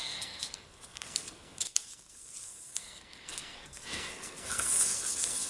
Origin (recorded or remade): remade